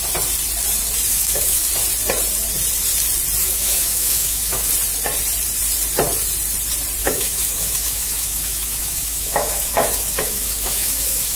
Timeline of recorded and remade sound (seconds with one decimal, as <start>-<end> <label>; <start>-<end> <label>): 0.0-1.1 recorded; 1.1-1.6 remade; 1.6-3.4 recorded; 3.4-4.7 remade; 4.7-7.0 recorded; 7.0-11.4 remade